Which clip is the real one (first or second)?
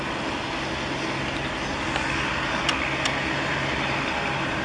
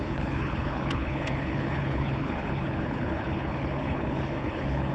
first